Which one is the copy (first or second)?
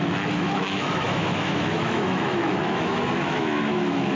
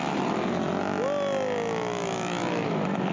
first